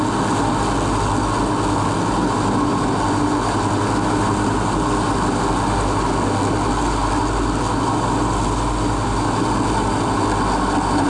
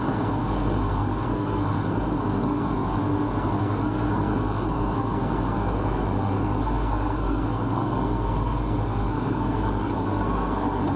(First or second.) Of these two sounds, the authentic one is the first